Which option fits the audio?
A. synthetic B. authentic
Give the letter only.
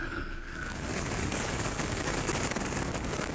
A